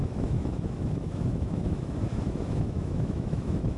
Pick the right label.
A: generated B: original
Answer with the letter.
A